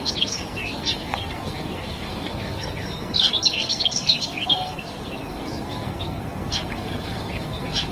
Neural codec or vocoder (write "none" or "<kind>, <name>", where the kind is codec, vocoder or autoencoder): codec, SNAC